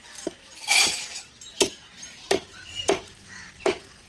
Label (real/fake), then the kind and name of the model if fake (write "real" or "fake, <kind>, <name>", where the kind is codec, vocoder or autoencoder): fake, vocoder, BigVGAN v2